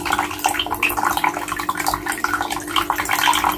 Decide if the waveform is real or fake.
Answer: real